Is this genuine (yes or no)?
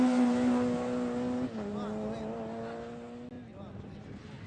yes